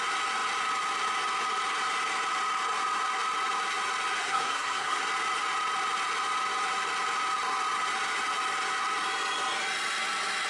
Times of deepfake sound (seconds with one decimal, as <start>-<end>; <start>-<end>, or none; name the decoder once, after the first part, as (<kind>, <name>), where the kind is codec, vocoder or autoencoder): 4.2-5.0 (codec, SNAC)